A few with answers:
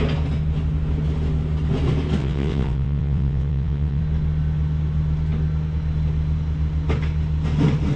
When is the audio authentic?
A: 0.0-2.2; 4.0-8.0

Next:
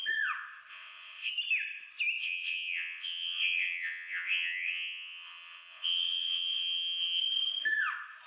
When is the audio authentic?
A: 0.0-0.7; 1.3-2.2; 7.2-8.3

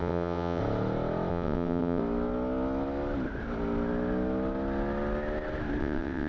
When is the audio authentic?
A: 0.6-1.3; 2.0-5.8

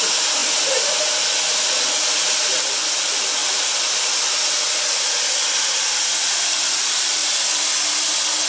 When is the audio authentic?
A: 0.0-8.5

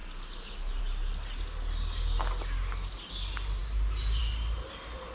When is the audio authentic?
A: 0.0-5.1

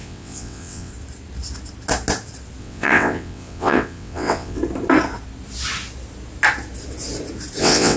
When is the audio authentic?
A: 0.9-2.6; 4.6-7.6

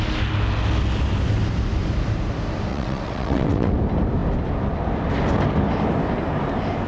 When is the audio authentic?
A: 0.0-2.7; 3.7-6.9